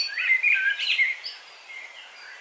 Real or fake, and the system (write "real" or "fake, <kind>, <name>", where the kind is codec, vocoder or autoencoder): fake, vocoder, BigVGAN v2